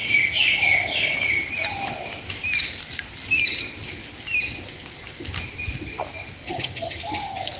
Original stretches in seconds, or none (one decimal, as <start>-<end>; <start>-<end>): 0.0-6.4; 7.0-7.6